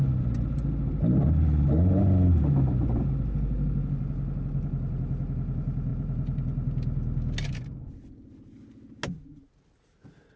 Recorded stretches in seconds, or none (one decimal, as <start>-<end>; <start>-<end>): 0.0-10.4